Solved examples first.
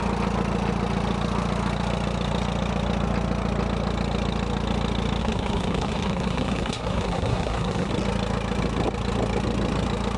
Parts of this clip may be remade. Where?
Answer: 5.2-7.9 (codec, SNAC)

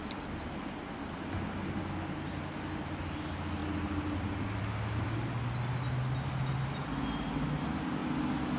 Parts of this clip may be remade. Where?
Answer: none

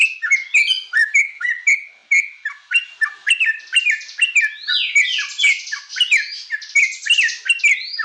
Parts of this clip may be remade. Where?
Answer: 1.0-1.5 (autoencoder, DAC-VAE)